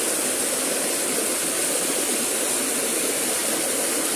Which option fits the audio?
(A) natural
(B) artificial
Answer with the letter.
A